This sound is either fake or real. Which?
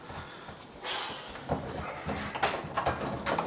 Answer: real